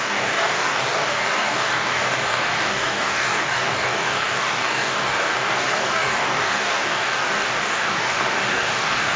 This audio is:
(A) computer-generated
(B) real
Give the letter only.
A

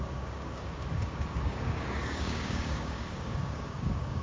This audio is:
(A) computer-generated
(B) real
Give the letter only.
A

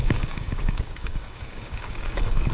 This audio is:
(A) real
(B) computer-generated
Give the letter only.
B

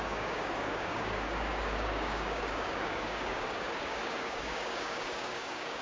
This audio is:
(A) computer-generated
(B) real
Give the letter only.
A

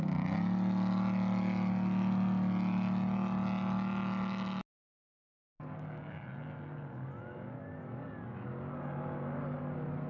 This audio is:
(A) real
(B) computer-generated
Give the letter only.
A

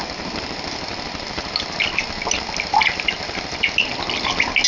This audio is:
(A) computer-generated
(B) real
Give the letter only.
B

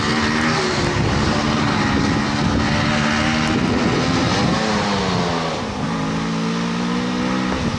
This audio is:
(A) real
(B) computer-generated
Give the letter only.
A